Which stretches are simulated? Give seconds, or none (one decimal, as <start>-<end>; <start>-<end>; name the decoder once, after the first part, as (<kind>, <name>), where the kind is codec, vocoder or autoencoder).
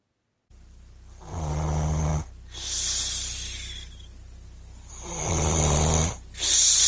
none